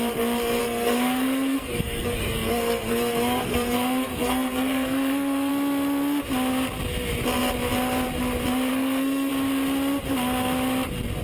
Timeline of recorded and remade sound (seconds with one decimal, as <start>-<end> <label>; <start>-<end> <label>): 0.0-0.6 recorded; 0.6-5.5 remade; 5.5-8.7 recorded; 8.7-9.3 remade; 9.3-11.2 recorded